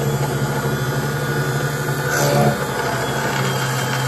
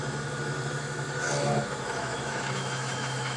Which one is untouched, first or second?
first